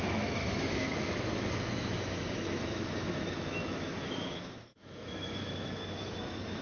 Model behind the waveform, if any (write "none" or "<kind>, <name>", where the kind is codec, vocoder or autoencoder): autoencoder, DAC-VAE